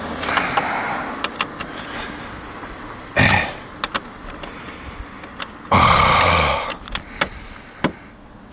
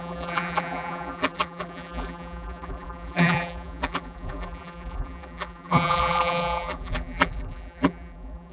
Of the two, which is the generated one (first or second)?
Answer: second